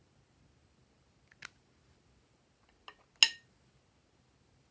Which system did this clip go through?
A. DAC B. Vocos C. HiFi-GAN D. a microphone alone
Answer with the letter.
D